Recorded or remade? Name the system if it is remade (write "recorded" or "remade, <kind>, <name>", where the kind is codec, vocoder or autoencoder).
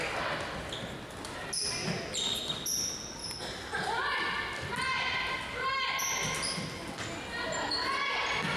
recorded